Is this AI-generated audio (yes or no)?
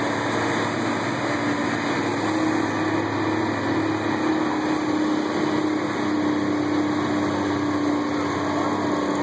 no